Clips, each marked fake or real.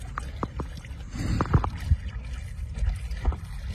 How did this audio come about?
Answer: real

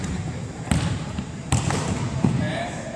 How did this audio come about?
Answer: fake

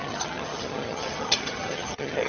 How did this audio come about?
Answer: fake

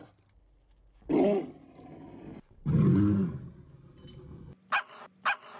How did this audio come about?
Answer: real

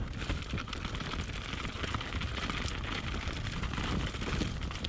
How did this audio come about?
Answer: real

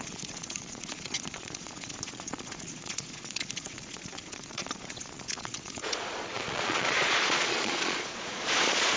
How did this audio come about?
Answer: fake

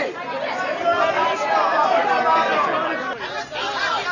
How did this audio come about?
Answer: real